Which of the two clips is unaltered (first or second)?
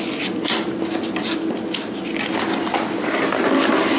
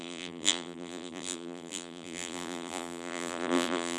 first